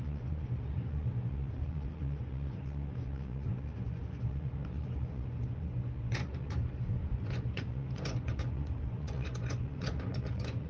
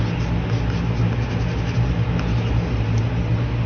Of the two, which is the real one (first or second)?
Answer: second